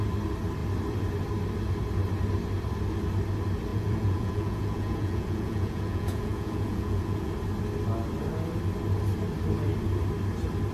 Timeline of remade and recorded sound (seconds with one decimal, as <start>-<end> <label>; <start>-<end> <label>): 0.0-3.7 recorded; 3.7-7.3 remade; 7.3-10.7 recorded